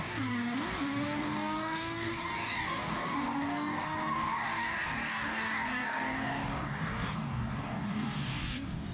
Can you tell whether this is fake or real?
fake